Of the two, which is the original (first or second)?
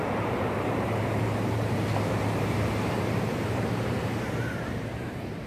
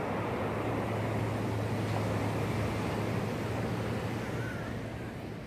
second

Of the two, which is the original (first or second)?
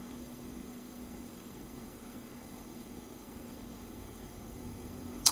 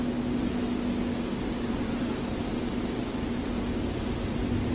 second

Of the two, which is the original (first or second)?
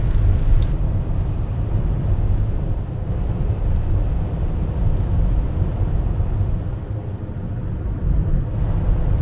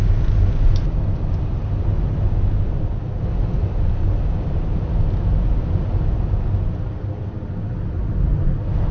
second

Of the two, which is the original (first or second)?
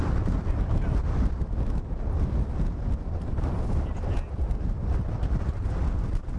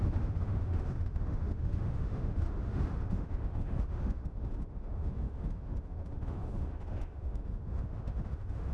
first